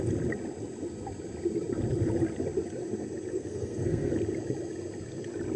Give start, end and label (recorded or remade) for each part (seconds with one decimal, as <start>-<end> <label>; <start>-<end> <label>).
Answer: 0.0-3.3 recorded; 3.3-4.1 remade; 4.1-5.6 recorded